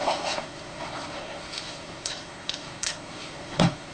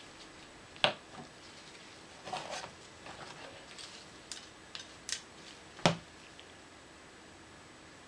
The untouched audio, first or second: second